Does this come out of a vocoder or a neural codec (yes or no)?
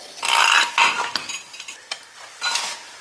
no